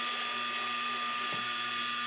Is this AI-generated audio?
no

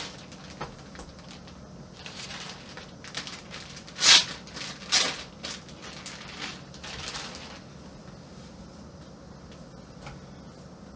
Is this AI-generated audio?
no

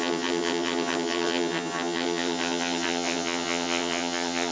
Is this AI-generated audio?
yes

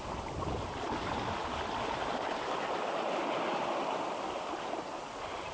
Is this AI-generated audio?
no